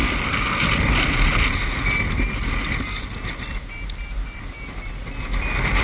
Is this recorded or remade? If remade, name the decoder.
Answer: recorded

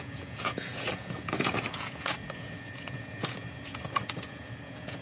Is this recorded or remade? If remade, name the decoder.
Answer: remade, vocoder, Vocos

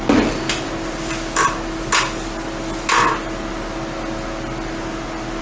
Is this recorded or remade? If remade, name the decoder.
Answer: recorded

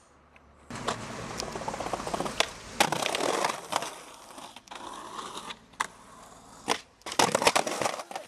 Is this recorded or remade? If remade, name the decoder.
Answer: recorded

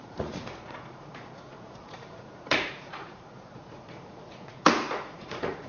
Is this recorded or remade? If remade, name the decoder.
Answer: remade, vocoder, Vocos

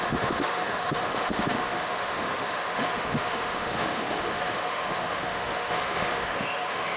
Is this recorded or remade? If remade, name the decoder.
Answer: remade, autoencoder, DAC-VAE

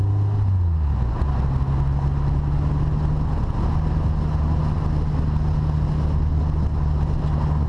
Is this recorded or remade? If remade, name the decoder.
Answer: recorded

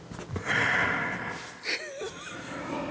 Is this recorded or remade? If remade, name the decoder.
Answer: recorded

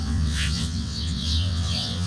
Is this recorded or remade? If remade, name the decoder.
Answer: remade, vocoder, WaveNeXt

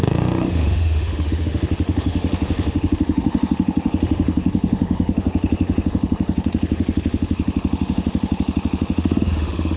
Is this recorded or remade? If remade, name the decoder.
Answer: remade, autoencoder, DAC-VAE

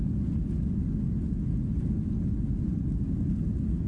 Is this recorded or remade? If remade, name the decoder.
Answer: recorded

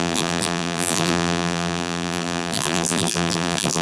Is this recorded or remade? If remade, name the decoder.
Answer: remade, vocoder, BigVGAN v2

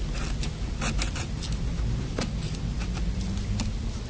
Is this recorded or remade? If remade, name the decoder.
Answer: recorded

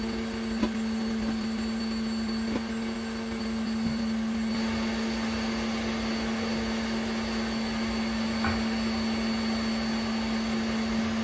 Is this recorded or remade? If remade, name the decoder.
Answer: recorded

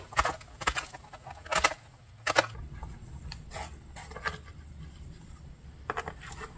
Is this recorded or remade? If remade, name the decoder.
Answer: recorded